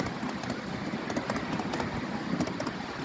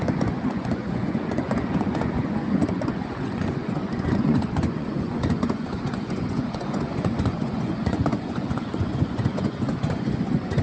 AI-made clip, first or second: second